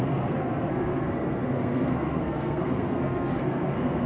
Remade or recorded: remade